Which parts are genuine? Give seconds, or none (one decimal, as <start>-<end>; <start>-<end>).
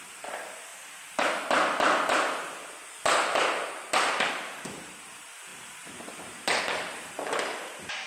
0.7-4.3